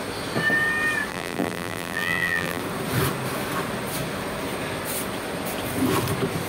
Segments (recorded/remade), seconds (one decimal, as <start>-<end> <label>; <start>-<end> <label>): 0.0-1.1 recorded; 1.1-2.6 remade; 2.6-6.5 recorded